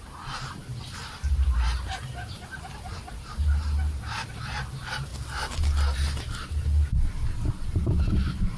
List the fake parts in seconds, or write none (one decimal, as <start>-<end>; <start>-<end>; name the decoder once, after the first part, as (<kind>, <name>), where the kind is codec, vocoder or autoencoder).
none